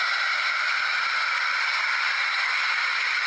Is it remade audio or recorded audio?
recorded